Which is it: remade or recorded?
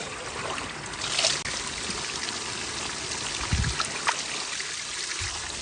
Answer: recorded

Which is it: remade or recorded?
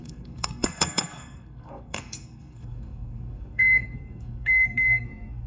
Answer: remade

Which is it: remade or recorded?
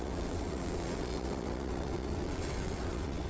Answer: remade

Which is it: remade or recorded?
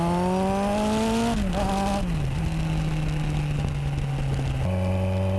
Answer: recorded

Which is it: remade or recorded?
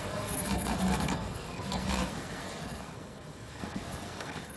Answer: remade